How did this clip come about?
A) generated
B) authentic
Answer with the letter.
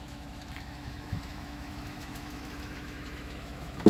A